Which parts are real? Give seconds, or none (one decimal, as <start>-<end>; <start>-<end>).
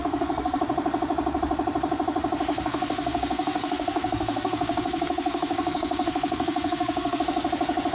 0.6-2.5; 7.2-7.9